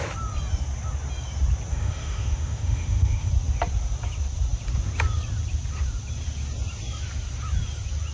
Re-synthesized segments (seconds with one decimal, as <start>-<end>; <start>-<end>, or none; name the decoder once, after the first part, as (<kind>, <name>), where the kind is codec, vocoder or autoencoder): 1.7-3.3 (autoencoder, DAC-VAE)

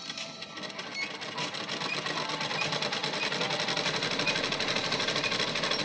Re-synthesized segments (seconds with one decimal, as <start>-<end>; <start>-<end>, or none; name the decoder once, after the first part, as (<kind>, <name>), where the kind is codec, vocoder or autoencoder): none